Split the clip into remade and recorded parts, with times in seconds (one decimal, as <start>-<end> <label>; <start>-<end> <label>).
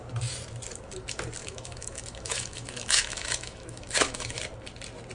0.0-1.4 recorded; 1.4-4.4 remade; 4.4-5.1 recorded